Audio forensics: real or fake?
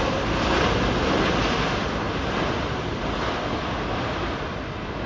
real